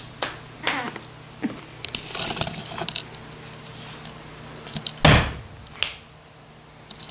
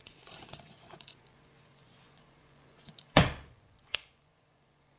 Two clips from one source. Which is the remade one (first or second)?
second